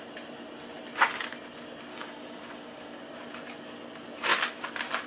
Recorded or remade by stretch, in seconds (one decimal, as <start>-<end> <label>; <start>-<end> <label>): 0.0-1.9 recorded; 1.9-3.0 remade; 3.0-5.1 recorded